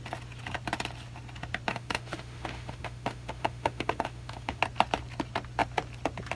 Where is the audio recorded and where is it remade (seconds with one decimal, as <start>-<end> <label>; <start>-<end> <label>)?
0.0-1.7 recorded; 1.7-4.6 remade; 4.6-6.4 recorded